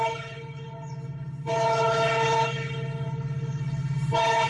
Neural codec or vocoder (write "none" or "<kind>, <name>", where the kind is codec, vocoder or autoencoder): codec, HILCodec